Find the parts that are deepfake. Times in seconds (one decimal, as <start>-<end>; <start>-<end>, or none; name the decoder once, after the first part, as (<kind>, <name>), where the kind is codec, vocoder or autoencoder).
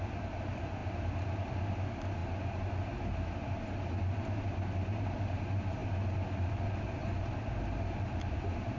none